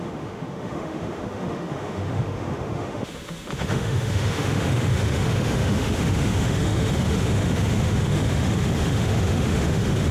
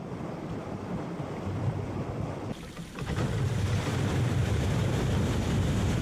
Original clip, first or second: second